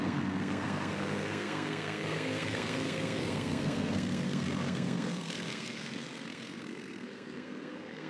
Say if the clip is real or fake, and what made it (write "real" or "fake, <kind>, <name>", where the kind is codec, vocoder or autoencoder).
fake, codec, SNAC